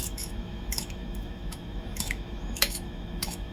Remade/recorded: remade